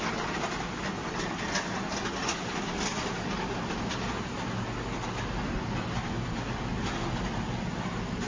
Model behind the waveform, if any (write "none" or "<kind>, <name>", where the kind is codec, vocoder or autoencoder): none